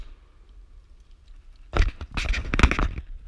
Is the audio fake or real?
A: real